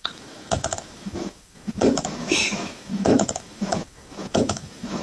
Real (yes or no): no